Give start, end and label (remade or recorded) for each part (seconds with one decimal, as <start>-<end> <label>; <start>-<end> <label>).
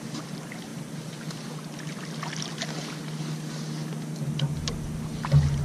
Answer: 0.0-5.6 recorded